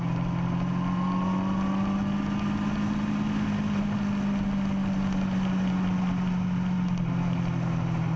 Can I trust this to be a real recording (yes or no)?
yes